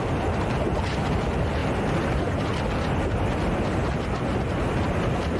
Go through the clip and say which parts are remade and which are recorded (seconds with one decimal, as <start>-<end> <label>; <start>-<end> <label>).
0.0-5.4 recorded